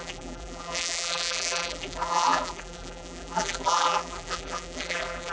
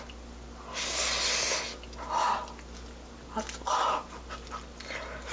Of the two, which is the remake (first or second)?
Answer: first